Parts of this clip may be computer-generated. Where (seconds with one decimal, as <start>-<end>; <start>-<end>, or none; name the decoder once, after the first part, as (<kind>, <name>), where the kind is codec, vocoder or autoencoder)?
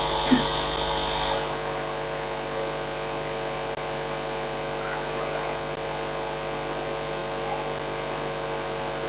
none